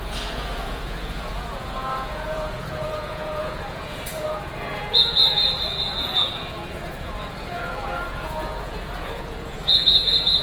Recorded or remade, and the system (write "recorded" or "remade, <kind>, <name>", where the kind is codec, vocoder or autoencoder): remade, vocoder, Vocos